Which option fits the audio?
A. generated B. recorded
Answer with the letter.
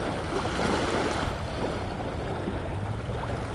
B